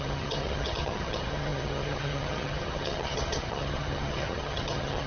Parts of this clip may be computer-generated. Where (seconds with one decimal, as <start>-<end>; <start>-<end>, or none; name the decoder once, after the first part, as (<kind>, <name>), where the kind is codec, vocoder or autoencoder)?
0.0-5.1 (vocoder, HiFi-GAN)